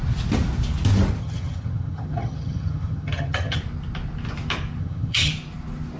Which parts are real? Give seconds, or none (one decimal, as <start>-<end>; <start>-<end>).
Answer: 0.0-1.2; 3.6-4.8; 5.3-6.0